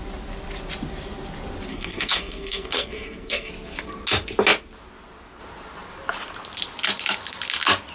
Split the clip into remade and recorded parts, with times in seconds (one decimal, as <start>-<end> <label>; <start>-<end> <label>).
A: 0.0-1.7 recorded; 1.7-3.5 remade; 3.5-7.9 recorded